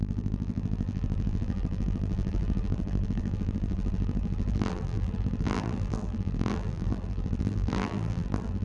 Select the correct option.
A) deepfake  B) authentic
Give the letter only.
A